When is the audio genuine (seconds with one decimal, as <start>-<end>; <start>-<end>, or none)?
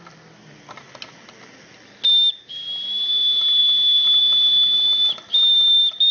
0.0-6.1